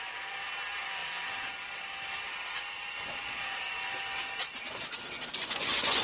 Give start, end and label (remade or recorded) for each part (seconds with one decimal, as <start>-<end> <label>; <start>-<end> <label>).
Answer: 0.0-5.3 recorded; 5.3-6.0 remade